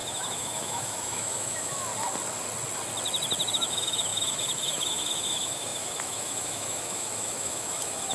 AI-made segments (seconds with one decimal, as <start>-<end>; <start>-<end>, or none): 0.0-1.9; 3.5-8.1